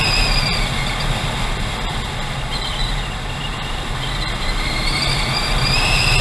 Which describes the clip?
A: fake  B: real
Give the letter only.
B